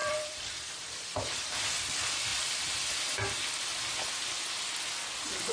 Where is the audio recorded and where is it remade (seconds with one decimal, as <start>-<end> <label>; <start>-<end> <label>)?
0.0-1.4 remade; 1.4-5.5 recorded